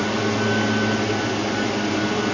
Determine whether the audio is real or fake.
real